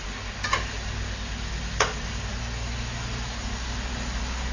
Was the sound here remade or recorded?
recorded